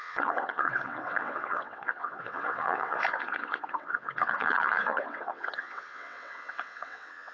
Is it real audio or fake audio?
fake